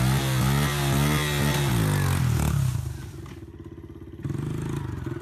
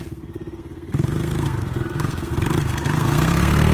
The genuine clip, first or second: first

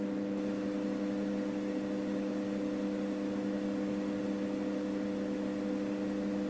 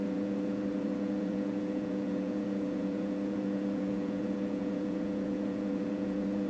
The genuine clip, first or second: first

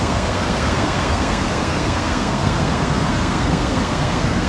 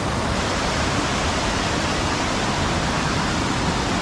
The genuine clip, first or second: second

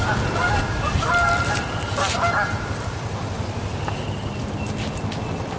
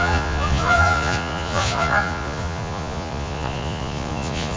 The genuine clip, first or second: first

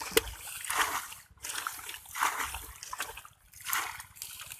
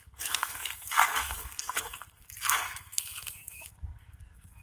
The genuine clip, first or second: first